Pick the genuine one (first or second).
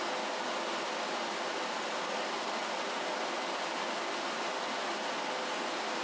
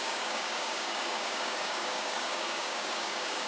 first